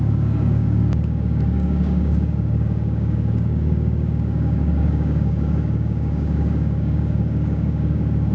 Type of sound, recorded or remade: remade